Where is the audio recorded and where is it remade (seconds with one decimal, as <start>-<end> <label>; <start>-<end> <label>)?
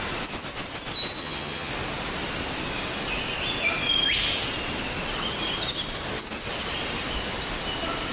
0.0-1.2 recorded; 1.2-1.7 remade; 1.7-8.1 recorded